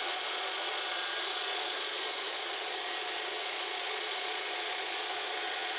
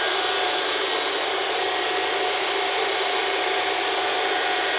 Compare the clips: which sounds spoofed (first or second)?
first